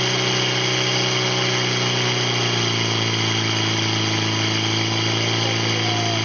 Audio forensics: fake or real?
real